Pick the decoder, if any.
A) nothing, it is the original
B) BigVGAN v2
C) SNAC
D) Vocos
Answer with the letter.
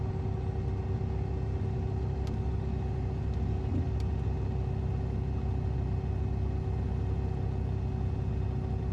A